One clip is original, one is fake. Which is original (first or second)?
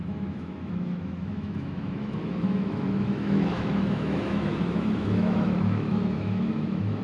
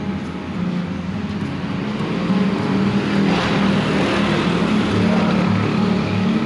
second